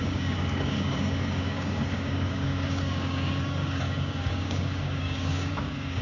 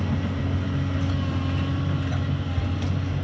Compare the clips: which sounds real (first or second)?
second